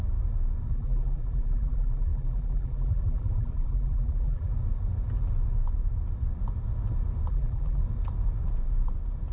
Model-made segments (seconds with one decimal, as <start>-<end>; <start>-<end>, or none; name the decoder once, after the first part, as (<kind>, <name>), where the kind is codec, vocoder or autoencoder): 0.7-4.5 (vocoder, BigVGAN v2); 7.3-7.8